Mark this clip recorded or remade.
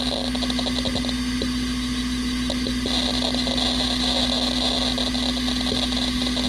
recorded